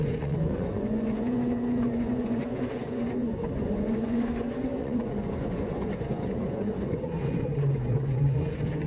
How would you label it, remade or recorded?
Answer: remade